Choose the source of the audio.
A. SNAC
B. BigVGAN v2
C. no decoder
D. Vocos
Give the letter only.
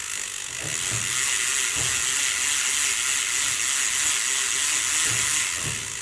C